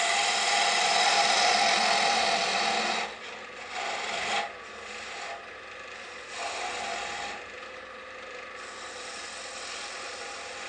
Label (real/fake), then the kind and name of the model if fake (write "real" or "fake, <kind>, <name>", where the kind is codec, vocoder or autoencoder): real